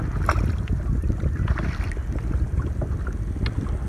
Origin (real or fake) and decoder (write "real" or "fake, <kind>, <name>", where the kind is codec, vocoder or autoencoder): real